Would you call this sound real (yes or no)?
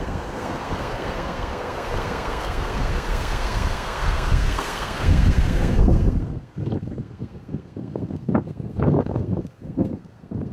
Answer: no